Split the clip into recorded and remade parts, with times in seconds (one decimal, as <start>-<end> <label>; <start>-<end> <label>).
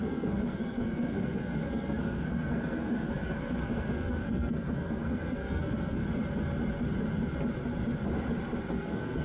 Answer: 0.0-6.0 remade; 6.0-8.7 recorded; 8.7-9.2 remade